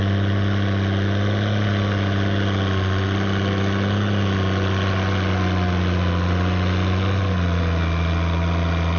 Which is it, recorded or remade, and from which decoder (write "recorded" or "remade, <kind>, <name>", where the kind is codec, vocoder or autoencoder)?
recorded